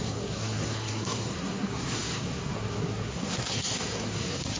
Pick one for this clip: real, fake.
fake